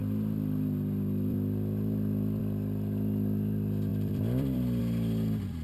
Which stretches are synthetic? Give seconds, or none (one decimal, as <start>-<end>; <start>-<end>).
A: 0.0-2.4; 3.9-4.8